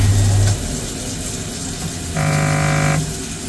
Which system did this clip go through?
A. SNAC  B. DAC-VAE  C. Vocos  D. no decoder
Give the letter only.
D